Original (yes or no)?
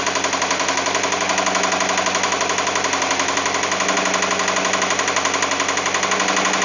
yes